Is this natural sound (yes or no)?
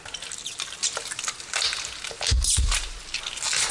yes